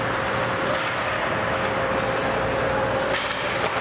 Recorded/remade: recorded